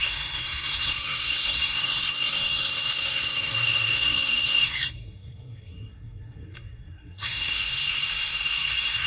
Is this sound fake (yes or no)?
yes